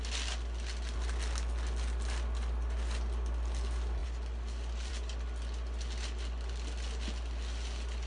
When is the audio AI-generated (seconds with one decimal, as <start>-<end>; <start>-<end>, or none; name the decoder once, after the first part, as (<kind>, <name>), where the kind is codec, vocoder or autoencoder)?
none